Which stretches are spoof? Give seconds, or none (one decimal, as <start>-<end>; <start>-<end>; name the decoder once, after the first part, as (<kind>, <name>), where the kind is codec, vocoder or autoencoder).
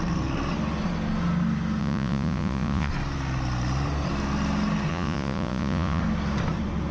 1.8-2.9 (vocoder, Vocos); 4.9-6.0